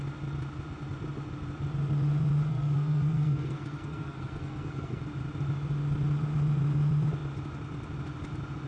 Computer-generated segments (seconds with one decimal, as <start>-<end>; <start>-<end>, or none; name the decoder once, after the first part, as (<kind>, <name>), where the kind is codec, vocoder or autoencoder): 2.5-5.0 (codec, SNAC)